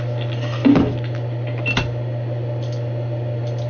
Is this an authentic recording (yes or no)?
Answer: yes